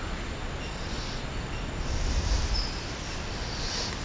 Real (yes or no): yes